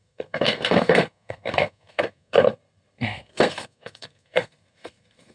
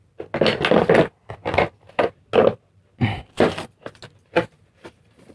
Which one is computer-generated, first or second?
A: first